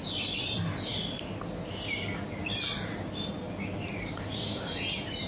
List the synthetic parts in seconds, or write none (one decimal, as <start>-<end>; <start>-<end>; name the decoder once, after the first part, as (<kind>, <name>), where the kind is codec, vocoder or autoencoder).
none